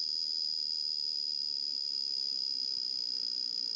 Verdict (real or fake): real